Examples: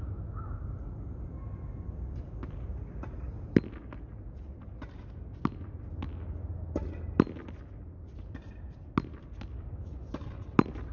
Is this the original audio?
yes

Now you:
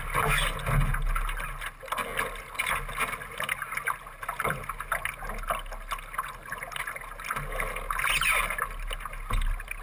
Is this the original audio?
yes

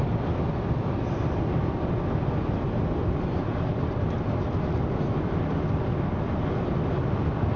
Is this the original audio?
yes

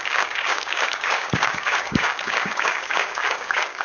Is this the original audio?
no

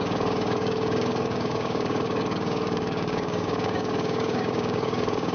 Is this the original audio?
no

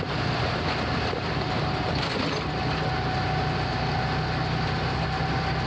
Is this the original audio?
yes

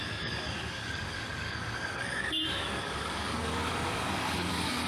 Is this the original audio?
no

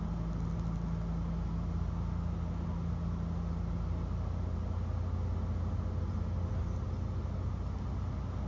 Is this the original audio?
yes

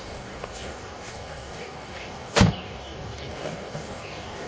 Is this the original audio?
no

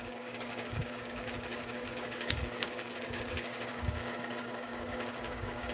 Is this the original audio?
no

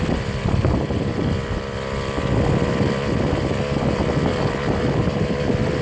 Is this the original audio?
yes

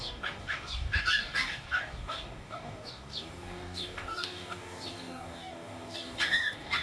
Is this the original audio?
no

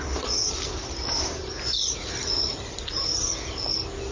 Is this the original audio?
yes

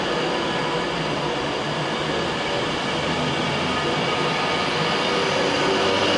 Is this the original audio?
yes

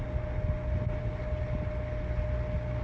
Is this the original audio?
yes